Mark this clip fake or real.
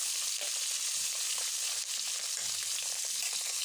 real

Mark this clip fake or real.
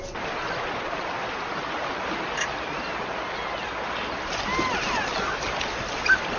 real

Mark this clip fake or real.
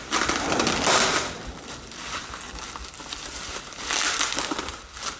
real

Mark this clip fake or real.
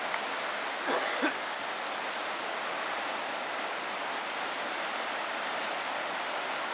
real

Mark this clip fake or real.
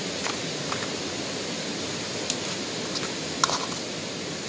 real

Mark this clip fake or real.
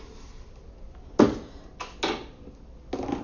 real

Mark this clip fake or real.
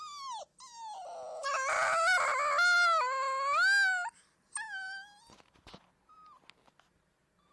real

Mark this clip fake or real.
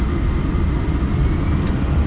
fake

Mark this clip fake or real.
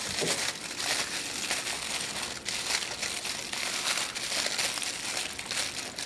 real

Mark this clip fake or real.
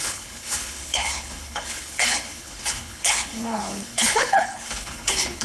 fake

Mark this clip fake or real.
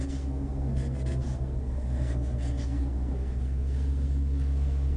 fake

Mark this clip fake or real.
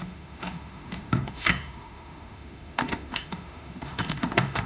fake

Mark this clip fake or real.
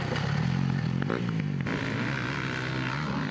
real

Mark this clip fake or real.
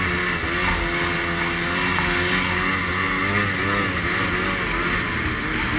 real